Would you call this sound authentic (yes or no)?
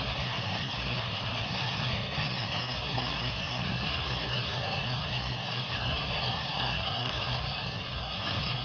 no